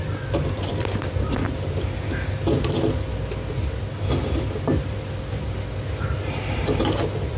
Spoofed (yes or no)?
no